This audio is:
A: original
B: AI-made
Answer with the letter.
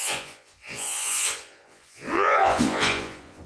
B